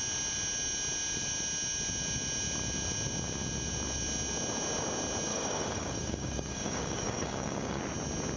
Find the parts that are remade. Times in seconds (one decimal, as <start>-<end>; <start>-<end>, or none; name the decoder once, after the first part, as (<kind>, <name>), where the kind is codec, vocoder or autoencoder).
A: 5.3-7.8 (codec, DAC)

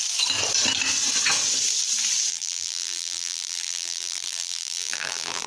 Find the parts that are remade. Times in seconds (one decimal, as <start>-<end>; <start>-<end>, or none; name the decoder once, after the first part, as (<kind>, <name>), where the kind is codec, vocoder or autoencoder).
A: 2.3-5.5 (vocoder, BigVGAN v2)

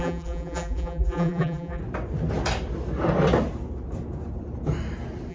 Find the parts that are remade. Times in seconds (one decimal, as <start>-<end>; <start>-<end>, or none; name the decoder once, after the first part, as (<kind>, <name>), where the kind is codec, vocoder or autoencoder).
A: 0.0-1.8 (vocoder, BigVGAN v2)

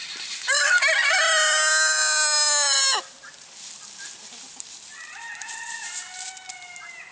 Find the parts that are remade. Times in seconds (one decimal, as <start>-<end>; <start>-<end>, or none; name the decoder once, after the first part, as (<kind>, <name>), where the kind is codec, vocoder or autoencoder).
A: none

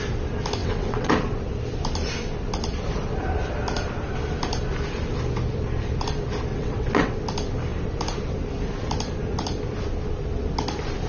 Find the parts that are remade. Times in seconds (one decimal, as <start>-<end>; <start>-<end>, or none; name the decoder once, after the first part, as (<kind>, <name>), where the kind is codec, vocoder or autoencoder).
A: 0.6-1.1 (vocoder, WaveNeXt); 6.5-7.2